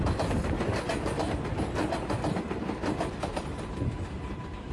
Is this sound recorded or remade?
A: recorded